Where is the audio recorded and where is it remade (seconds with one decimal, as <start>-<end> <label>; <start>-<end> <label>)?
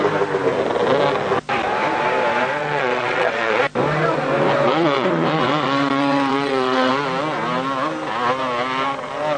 0.0-2.6 recorded; 2.6-3.6 remade; 3.6-4.7 recorded; 4.7-6.9 remade; 6.9-9.4 recorded